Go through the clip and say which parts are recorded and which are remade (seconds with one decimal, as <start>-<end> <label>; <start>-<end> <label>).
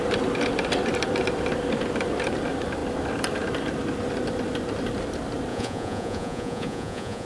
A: 0.0-5.5 recorded; 5.5-7.3 remade